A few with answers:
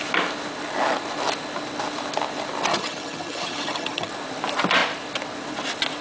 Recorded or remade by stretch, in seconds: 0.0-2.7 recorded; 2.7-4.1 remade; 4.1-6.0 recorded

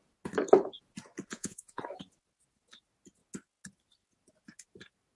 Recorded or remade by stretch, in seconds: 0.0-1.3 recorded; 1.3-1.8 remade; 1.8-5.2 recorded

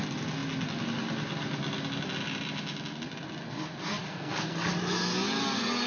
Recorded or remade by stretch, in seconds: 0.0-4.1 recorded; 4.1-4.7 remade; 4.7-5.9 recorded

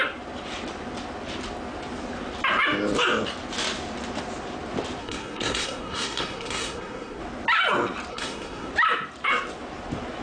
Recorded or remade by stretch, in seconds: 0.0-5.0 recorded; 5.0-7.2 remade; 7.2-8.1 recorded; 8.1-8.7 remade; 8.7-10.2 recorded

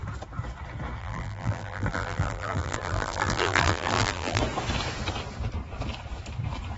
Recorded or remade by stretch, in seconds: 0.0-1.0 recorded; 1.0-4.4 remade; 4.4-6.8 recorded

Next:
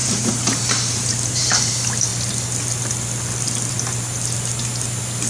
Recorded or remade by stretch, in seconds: 0.0-1.7 remade; 1.7-5.3 recorded

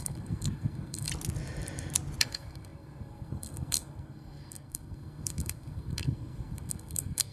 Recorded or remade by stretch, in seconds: 0.0-1.1 remade; 1.1-2.2 recorded; 2.2-7.3 remade

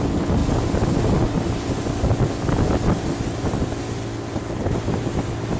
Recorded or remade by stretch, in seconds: 0.0-5.6 recorded